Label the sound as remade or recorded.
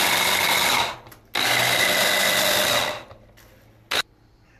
recorded